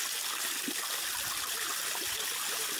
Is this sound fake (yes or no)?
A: no